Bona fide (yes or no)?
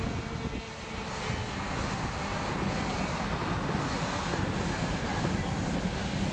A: yes